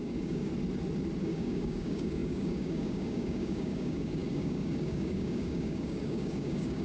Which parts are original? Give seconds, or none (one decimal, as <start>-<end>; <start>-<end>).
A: 0.5-1.2